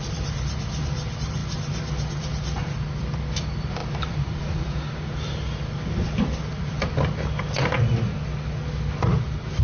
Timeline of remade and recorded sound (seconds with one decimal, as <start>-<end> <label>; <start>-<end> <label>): 0.0-1.4 remade; 1.4-2.6 recorded; 2.6-8.1 remade; 8.1-9.6 recorded